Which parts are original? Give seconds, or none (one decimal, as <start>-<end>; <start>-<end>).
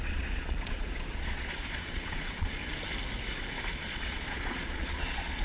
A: 2.6-3.7